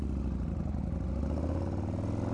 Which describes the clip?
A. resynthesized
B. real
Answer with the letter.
B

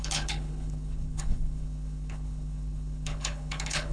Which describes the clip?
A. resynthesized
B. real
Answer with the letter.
A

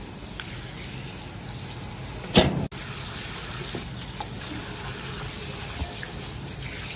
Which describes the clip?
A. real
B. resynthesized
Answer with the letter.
A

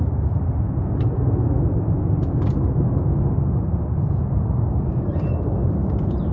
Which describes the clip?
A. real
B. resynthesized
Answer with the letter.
A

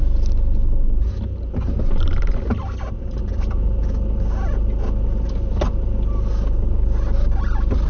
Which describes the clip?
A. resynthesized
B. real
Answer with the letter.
B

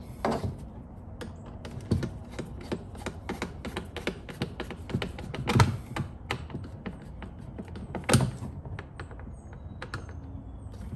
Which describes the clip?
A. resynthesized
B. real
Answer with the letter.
B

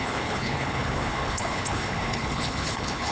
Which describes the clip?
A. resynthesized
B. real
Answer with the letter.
A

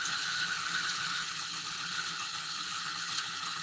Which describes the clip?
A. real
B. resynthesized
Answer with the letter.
B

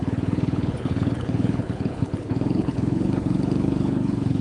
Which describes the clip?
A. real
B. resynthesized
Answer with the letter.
B